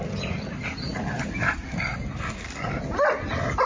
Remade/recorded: recorded